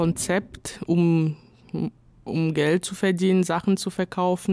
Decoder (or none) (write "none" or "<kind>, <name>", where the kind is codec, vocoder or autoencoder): none